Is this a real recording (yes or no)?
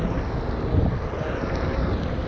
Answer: yes